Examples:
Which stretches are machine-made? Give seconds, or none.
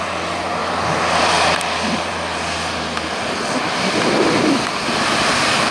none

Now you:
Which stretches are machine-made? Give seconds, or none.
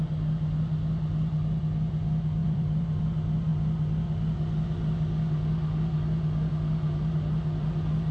2.4-3.0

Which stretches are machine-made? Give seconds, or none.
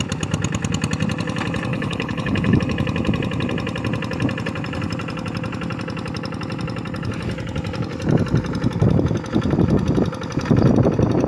1.7-2.6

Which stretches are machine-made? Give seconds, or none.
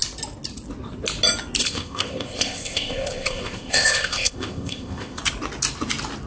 1.6-5.2